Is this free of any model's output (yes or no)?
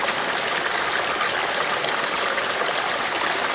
yes